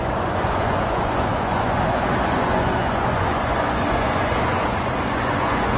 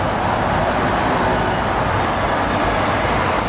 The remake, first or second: first